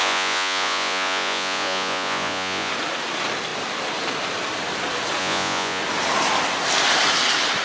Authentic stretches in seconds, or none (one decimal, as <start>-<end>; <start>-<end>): 2.7-5.2; 5.8-7.6